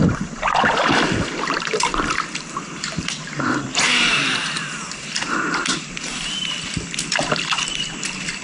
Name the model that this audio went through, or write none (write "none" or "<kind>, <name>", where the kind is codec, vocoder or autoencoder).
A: vocoder, BigVGAN v2